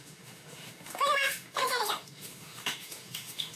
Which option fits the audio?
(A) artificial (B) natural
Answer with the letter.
A